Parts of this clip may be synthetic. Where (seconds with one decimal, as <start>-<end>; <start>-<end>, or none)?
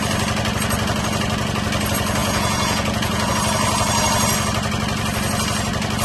2.2-3.3